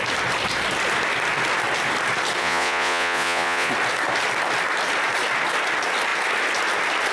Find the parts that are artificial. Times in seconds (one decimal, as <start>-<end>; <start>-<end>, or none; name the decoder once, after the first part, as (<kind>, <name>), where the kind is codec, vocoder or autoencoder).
2.4-3.7 (vocoder, Vocos)